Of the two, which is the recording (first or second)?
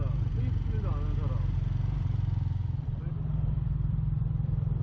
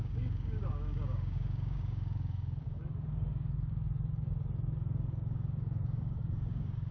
first